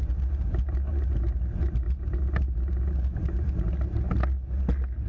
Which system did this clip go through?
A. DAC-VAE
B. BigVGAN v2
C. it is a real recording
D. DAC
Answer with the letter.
C